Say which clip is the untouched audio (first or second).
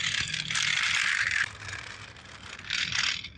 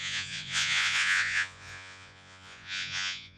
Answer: first